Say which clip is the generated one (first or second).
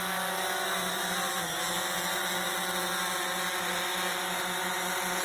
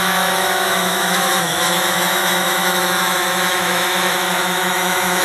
second